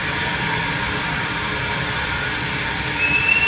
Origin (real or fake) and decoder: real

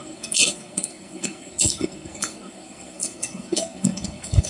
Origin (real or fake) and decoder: fake, codec, SNAC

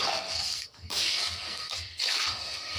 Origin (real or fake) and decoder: fake, codec, SNAC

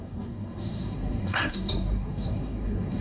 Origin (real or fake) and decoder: fake, codec, SNAC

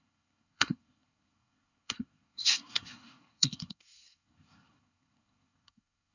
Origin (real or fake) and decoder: fake, codec, SNAC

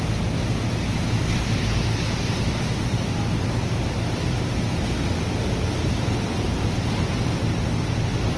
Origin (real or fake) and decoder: real